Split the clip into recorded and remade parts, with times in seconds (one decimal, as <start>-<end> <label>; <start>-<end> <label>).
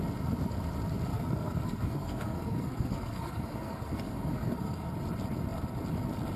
0.0-1.1 recorded; 1.1-4.9 remade; 4.9-6.4 recorded